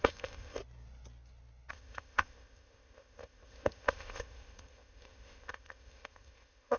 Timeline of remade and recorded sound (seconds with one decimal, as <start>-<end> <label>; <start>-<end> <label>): 0.0-0.6 remade; 0.6-1.7 recorded; 1.7-6.8 remade